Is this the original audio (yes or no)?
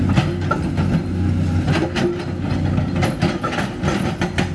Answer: yes